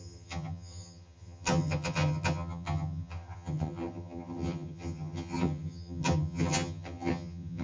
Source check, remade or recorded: remade